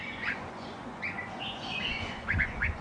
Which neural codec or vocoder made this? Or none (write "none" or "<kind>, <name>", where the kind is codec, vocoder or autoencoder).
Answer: vocoder, Vocos